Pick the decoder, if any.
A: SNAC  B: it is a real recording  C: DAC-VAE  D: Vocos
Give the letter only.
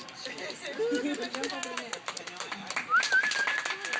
B